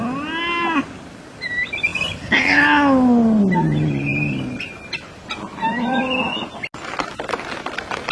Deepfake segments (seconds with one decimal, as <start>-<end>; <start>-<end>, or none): none